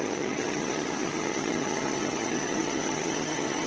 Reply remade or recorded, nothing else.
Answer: remade